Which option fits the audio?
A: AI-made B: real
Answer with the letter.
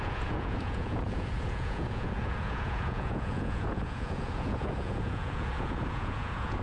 A